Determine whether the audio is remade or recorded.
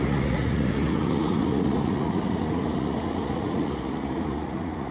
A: remade